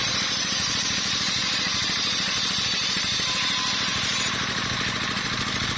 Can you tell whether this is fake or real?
fake